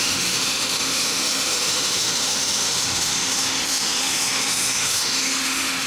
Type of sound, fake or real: fake